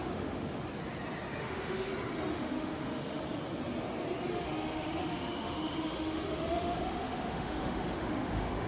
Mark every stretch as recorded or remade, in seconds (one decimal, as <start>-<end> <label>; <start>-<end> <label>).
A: 0.0-0.6 remade; 0.6-1.4 recorded; 1.4-1.9 remade; 1.9-2.3 recorded; 2.3-3.2 remade; 3.2-4.3 recorded; 4.3-8.7 remade